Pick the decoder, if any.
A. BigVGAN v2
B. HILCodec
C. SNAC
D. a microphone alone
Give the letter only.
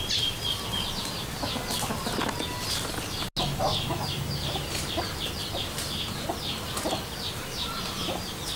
D